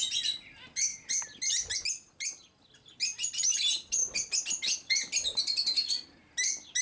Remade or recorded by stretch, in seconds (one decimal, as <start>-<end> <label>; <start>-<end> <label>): 0.0-6.8 recorded